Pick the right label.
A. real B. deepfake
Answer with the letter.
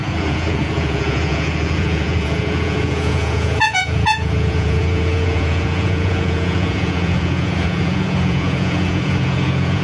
B